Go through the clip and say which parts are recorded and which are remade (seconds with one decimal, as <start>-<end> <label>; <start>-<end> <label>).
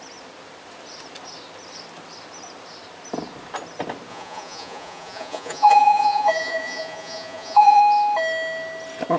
0.0-4.1 recorded; 4.1-7.8 remade; 7.8-9.2 recorded